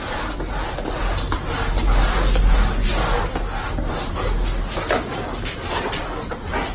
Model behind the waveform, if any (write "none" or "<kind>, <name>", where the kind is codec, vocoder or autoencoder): none